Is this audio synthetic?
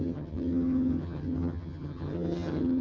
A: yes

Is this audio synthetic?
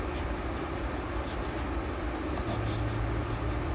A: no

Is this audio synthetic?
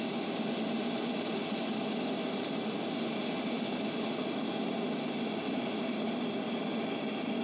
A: no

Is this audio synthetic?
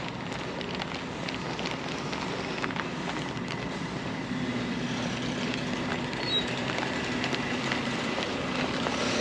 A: no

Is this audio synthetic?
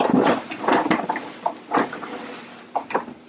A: no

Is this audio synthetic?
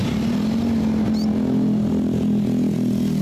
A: no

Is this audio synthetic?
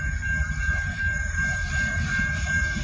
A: yes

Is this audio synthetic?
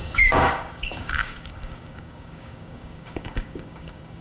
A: yes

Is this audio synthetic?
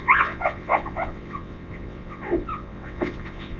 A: yes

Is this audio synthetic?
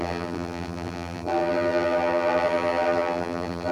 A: yes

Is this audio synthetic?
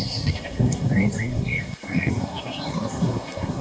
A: yes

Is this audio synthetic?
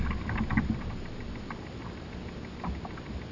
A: no